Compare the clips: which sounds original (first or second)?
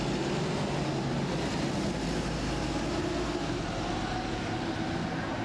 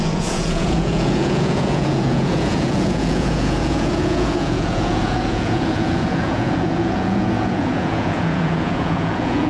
first